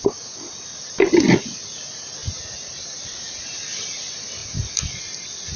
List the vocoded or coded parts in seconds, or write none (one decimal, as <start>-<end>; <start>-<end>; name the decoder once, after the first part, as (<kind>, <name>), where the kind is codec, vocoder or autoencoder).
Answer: none